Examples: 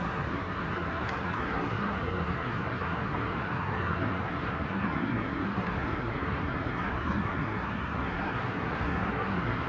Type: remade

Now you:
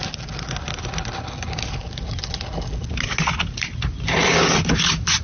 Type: recorded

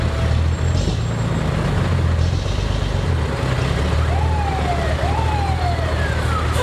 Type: recorded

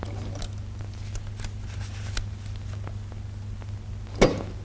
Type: recorded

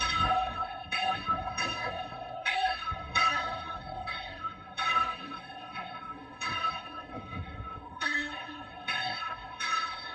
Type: remade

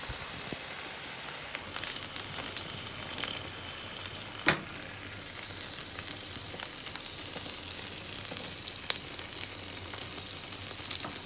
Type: recorded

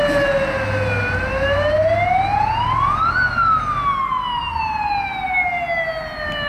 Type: recorded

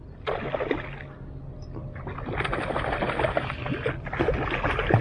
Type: recorded